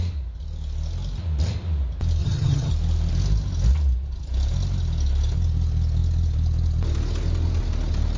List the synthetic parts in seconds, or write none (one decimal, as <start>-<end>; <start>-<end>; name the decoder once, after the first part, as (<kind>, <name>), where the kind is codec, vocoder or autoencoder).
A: 2.2-2.7 (vocoder, HiFi-GAN)